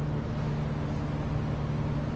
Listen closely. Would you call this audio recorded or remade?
recorded